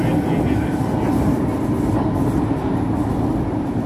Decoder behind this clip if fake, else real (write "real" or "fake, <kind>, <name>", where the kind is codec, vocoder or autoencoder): real